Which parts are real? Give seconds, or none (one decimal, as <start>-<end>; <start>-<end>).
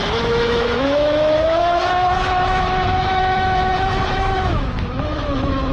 none